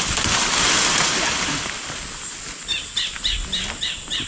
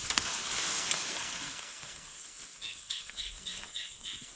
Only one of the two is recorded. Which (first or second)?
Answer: first